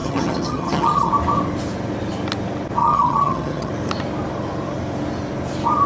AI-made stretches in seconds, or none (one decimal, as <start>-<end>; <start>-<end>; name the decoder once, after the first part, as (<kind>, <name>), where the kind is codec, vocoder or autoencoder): 0.0-1.1 (vocoder, HiFi-GAN); 2.8-3.7